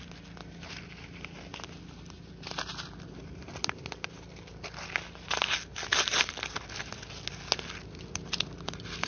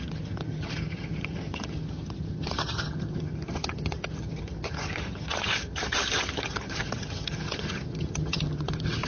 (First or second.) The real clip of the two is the first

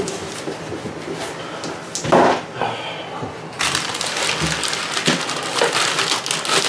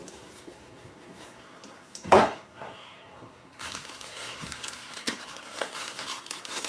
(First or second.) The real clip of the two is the first